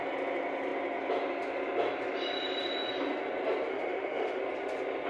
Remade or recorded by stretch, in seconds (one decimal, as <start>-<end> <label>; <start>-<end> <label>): 0.0-3.7 recorded; 3.7-4.4 remade; 4.4-5.1 recorded